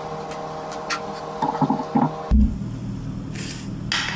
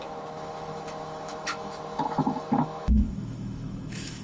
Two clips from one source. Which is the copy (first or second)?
second